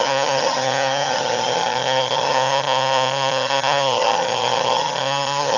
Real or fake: fake